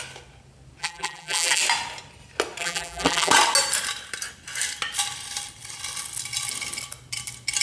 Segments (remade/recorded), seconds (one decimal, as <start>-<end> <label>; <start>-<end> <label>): 0.0-0.8 recorded; 0.8-1.6 remade; 1.6-2.6 recorded; 2.6-3.3 remade; 3.3-7.6 recorded